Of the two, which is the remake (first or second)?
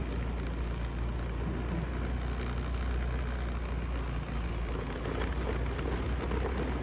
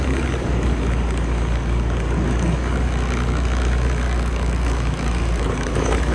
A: second